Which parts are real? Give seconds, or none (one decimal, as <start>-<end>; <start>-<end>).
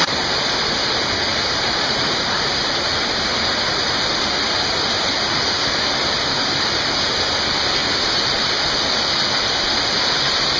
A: 0.0-10.6